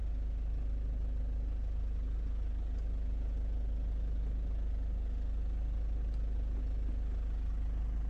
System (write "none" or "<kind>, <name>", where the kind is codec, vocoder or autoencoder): none